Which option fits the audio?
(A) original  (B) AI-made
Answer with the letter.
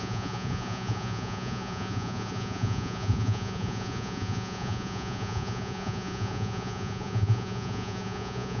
B